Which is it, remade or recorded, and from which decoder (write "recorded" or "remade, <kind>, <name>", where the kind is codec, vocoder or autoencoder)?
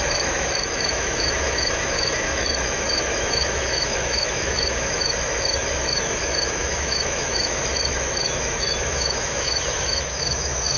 remade, autoencoder, DAC-VAE